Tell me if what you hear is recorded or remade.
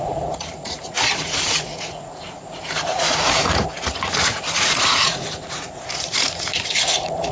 remade